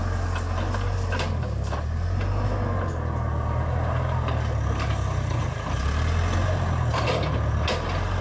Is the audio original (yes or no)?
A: yes